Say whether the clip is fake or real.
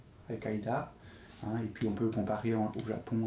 fake